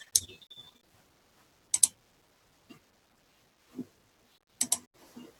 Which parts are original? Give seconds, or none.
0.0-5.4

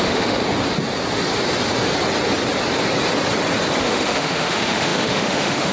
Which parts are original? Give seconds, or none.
0.4-3.8